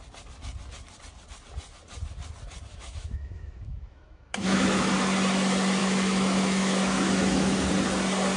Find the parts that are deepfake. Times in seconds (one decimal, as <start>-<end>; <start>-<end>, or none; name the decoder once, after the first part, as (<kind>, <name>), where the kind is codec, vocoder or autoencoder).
2.7-4.9 (autoencoder, DAC-VAE); 5.8-7.7